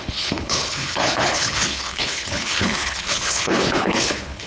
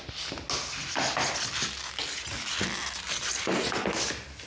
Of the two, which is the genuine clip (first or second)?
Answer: second